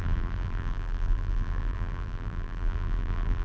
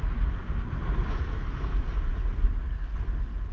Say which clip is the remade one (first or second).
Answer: first